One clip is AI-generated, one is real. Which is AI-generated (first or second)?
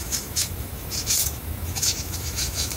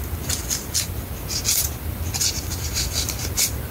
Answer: first